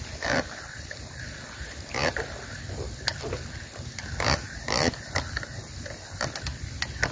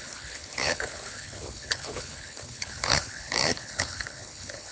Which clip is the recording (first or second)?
first